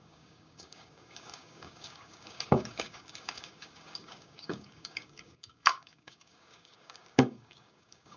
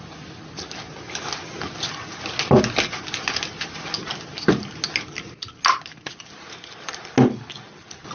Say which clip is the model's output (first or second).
first